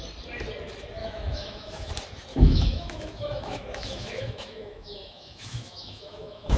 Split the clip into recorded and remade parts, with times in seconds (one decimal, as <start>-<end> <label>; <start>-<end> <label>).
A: 0.0-1.0 recorded; 1.0-1.9 remade; 1.9-2.3 recorded; 2.3-6.6 remade